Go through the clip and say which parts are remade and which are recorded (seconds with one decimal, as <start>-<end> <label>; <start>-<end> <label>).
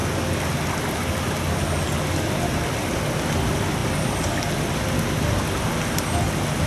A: 0.0-6.7 recorded